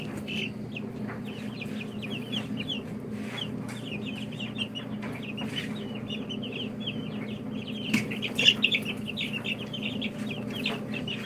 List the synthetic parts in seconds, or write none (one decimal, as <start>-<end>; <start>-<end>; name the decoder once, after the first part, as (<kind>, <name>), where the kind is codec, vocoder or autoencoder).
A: none